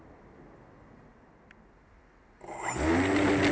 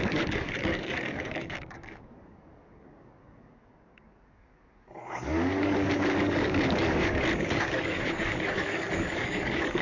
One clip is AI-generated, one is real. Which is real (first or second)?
first